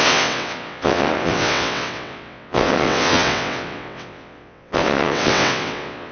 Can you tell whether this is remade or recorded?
remade